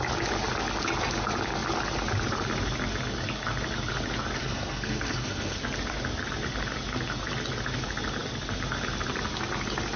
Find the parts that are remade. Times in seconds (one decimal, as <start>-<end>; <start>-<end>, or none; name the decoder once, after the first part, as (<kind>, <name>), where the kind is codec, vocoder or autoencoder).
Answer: 4.4-5.6 (codec, SNAC)